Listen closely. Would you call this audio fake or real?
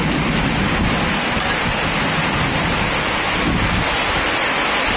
real